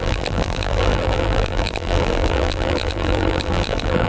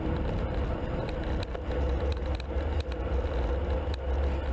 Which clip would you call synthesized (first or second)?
first